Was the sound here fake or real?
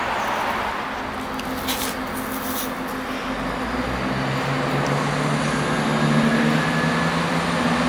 real